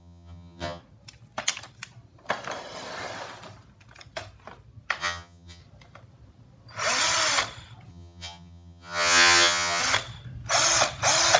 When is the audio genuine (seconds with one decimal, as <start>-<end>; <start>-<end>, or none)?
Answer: 0.8-5.0; 5.6-7.9; 9.8-11.4